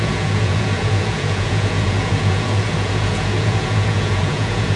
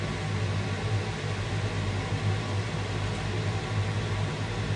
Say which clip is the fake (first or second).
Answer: first